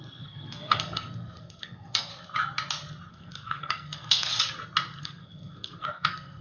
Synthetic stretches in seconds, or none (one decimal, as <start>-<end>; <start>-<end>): 0.0-2.1; 3.1-4.3; 5.0-6.4